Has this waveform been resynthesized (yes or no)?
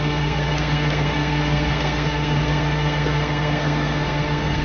yes